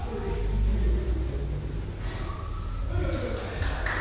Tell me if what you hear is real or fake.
real